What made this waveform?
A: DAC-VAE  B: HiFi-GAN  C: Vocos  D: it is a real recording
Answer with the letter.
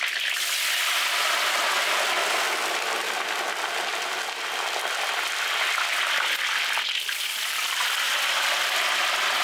D